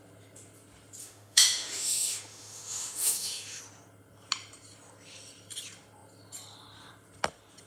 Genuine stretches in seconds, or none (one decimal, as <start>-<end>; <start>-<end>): 0.0-1.0; 3.6-7.7